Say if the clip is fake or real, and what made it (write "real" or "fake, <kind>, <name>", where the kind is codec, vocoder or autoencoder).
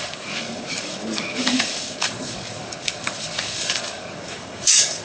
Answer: fake, codec, DAC